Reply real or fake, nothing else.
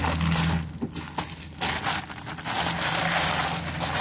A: real